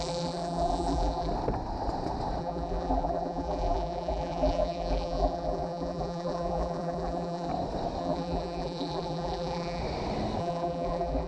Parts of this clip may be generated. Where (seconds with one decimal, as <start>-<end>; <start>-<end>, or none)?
0.0-1.3; 2.4-7.5; 8.0-9.8; 10.4-11.3